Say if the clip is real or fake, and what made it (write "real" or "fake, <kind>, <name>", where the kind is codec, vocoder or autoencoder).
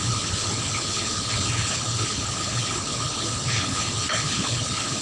fake, codec, HILCodec